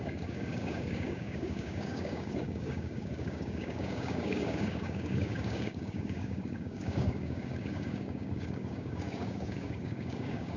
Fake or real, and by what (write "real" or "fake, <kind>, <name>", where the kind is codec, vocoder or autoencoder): fake, codec, DAC